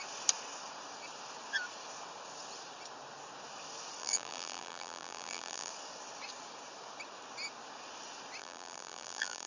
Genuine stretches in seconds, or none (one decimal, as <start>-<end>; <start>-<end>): 0.0-4.0; 5.7-8.4